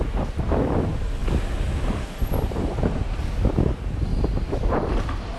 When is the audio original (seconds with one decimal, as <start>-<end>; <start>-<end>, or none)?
0.0-5.4